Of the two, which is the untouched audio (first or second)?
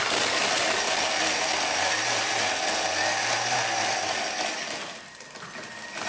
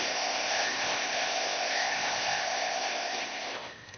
first